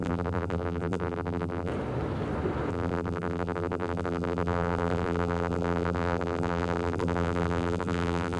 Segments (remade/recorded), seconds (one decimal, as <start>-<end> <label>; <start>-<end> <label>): 0.0-1.7 remade; 1.7-2.7 recorded; 2.7-8.4 remade